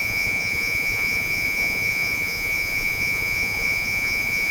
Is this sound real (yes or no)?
no